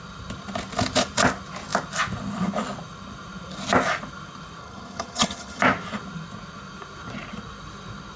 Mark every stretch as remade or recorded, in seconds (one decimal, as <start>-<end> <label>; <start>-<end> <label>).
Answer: 0.0-4.6 recorded; 4.6-5.6 remade; 5.6-8.2 recorded